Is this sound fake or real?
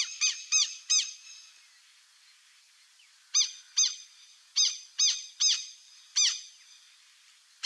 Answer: real